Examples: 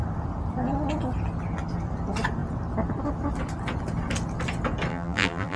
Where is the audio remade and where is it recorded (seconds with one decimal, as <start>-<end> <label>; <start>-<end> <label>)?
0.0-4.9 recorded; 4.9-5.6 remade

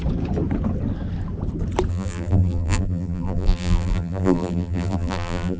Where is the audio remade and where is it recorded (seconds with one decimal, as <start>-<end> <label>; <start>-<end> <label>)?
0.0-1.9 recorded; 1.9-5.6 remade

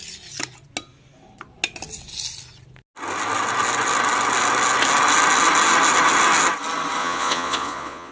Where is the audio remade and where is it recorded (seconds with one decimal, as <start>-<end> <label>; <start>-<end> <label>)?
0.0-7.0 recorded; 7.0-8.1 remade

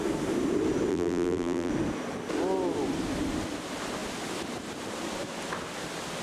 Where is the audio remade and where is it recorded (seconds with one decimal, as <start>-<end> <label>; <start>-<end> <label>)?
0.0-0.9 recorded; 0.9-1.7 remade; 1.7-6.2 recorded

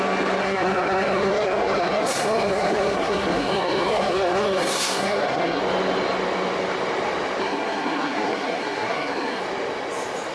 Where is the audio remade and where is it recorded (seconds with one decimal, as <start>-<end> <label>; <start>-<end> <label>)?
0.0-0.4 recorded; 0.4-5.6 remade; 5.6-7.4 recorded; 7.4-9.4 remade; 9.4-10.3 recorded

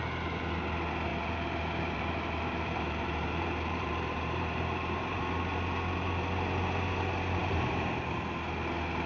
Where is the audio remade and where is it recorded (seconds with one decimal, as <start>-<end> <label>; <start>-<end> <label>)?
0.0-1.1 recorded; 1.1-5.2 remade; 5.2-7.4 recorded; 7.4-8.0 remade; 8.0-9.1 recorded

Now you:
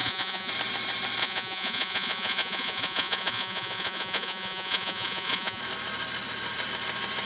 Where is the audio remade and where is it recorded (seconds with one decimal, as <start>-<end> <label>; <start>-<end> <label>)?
0.0-0.5 remade; 0.5-1.2 recorded; 1.2-5.6 remade; 5.6-7.3 recorded

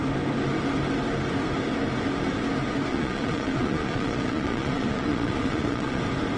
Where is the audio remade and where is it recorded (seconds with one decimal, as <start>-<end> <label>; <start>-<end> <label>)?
0.0-2.9 recorded; 2.9-6.0 remade; 6.0-6.4 recorded